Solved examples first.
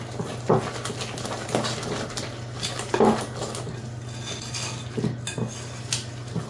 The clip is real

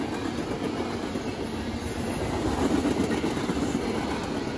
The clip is real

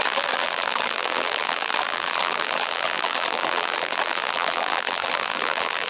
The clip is fake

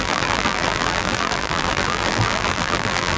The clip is fake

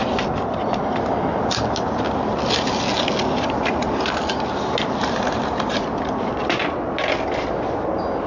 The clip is real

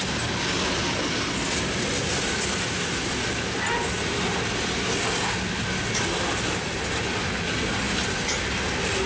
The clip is real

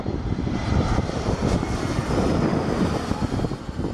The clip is fake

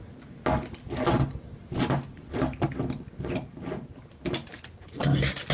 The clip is real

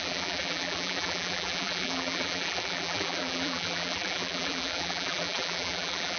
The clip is fake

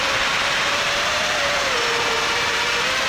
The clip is fake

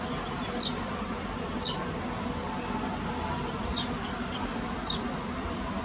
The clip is fake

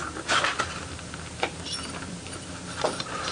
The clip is real